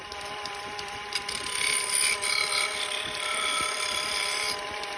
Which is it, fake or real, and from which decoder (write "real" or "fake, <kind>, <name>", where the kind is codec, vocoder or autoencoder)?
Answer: real